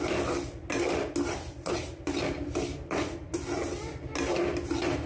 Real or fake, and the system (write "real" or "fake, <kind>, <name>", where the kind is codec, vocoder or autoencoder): real